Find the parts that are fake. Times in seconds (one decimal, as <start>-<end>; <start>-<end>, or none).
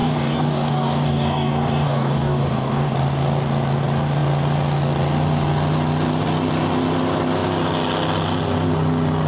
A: 0.0-2.9